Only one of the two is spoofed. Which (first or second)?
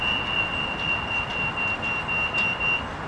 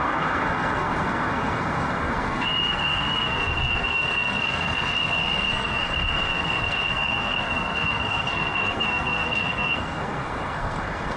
second